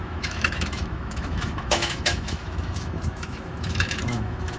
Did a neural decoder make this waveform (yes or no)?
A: yes